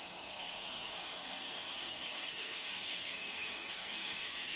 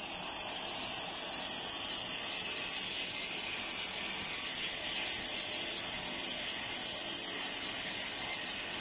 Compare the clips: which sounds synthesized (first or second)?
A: first